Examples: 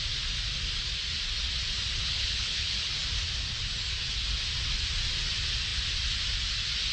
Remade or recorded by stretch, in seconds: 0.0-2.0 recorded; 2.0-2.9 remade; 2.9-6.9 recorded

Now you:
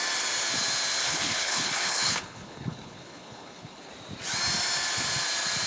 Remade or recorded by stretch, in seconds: 0.0-1.0 recorded; 1.0-3.9 remade; 3.9-5.7 recorded

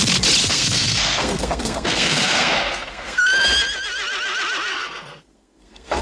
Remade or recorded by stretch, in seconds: 0.0-0.4 recorded; 0.4-3.2 remade; 3.2-4.7 recorded; 4.7-6.0 remade

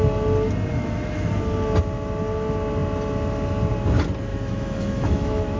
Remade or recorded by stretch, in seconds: 0.0-0.7 recorded; 0.7-1.3 remade; 1.3-4.3 recorded; 4.3-5.6 remade